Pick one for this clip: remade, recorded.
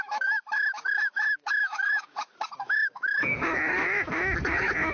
remade